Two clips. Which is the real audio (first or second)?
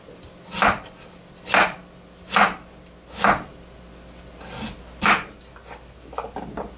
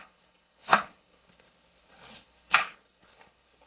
first